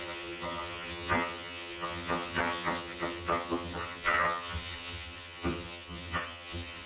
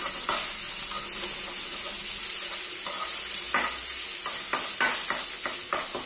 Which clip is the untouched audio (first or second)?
second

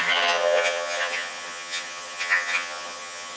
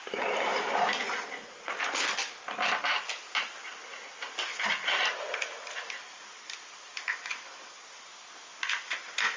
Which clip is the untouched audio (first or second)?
second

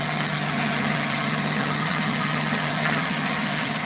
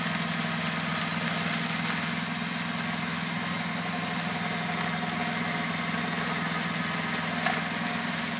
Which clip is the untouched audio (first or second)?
second